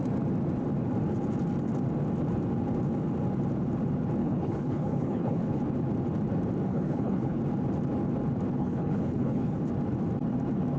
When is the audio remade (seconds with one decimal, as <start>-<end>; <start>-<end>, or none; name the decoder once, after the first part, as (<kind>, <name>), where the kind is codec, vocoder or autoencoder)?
4.2-5.6 (codec, HILCodec); 6.7-7.4; 8.6-9.6